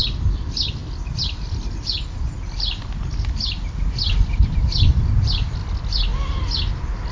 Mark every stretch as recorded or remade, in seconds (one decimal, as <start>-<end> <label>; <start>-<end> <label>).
0.0-5.6 remade; 5.6-7.1 recorded